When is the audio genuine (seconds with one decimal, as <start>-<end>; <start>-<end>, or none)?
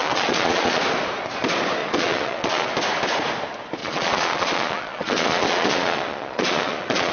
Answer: 0.8-1.8; 2.7-3.8